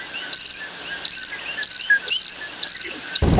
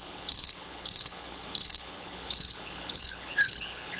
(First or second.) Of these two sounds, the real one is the first